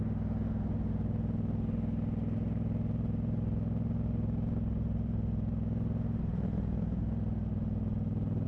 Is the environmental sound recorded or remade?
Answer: recorded